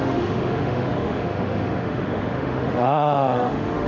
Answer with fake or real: fake